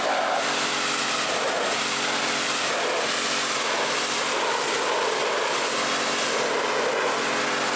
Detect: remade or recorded recorded